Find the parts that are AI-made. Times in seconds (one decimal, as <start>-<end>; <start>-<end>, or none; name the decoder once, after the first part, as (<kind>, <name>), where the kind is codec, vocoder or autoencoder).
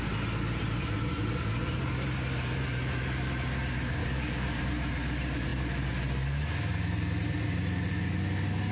4.0-4.6 (codec, DAC)